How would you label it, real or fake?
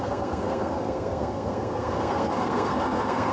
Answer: fake